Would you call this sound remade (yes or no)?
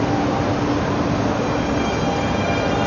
no